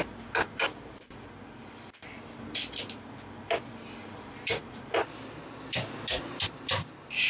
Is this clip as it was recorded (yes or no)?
yes